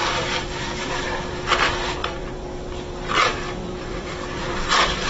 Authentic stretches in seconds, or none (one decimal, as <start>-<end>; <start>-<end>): 0.9-2.0